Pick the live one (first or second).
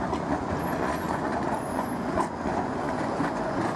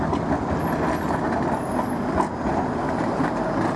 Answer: second